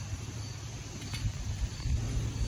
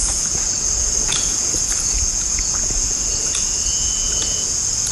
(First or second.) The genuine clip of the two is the first